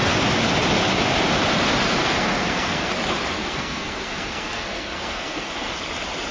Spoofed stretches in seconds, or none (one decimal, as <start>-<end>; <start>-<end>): 2.0-2.9; 3.4-5.7